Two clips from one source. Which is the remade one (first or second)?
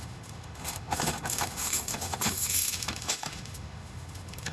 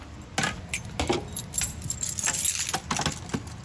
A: first